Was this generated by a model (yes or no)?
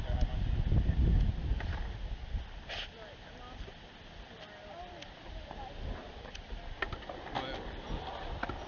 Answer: no